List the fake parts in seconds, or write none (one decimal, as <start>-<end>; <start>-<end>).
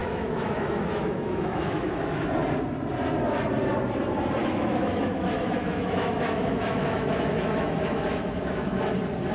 0.0-2.3; 4.4-8.8